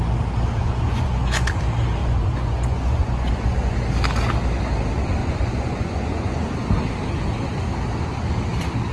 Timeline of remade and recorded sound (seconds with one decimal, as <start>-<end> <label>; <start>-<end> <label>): 0.0-0.6 recorded; 0.6-1.5 remade; 1.5-2.0 recorded; 2.0-3.7 remade; 3.7-5.2 recorded; 5.2-6.5 remade; 6.5-8.9 recorded